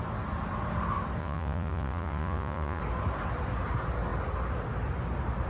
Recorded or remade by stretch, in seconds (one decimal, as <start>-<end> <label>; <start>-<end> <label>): 0.0-1.2 recorded; 1.2-2.8 remade; 2.8-5.5 recorded